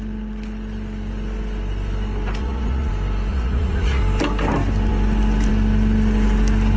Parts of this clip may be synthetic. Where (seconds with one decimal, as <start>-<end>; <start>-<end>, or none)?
2.4-2.9; 3.3-4.0